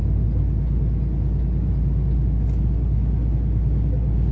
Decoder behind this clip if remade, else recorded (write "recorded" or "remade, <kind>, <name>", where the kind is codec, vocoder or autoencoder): recorded